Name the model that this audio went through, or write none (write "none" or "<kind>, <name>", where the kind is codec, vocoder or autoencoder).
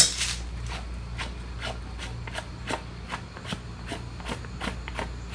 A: none